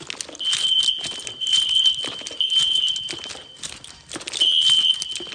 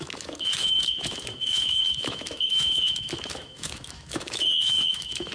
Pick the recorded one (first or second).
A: first